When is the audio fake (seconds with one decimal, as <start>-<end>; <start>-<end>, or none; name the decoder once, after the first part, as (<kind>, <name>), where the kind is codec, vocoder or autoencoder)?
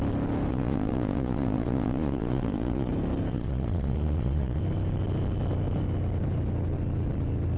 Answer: 0.5-2.9 (vocoder, Vocos); 3.3-4.6